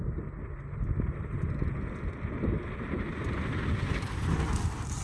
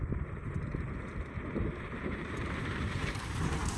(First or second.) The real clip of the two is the first